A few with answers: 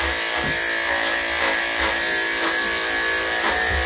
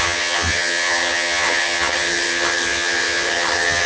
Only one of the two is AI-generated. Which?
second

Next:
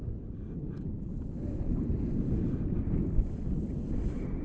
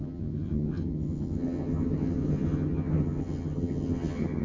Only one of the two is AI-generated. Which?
second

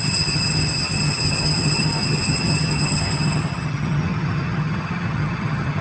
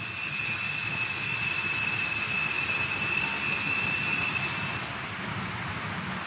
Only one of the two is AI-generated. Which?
first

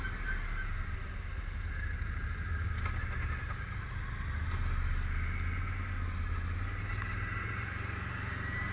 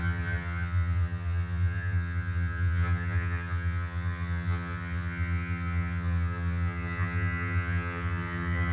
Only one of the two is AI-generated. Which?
second